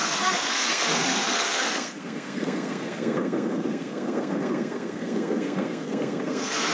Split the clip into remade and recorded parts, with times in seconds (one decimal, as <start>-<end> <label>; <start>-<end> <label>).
0.0-6.7 remade